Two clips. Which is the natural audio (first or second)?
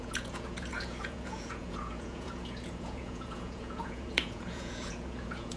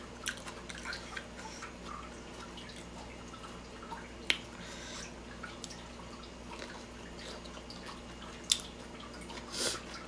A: second